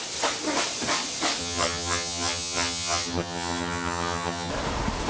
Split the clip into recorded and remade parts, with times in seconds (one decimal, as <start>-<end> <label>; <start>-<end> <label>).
0.0-1.4 recorded; 1.4-4.5 remade; 4.5-5.1 recorded